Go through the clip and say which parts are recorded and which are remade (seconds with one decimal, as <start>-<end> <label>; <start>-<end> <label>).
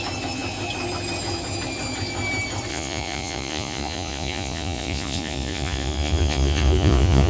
0.0-2.7 recorded; 2.7-7.3 remade